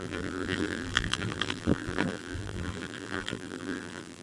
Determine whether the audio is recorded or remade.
remade